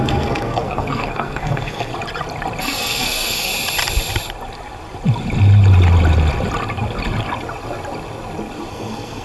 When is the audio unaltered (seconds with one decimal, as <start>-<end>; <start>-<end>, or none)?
1.9-2.6; 3.5-8.7